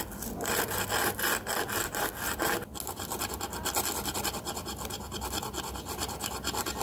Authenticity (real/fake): real